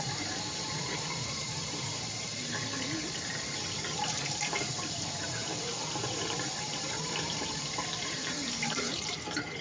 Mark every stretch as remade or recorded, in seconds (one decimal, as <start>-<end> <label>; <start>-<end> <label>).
0.0-2.3 remade; 2.3-3.4 recorded; 3.4-9.6 remade